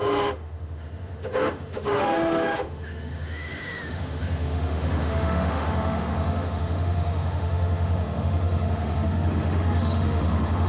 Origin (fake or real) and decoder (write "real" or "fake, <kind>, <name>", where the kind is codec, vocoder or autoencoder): fake, autoencoder, DAC-VAE